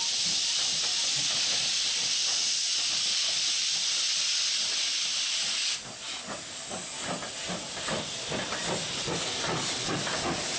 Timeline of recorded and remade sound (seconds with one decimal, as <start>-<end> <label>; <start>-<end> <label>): 0.0-10.6 recorded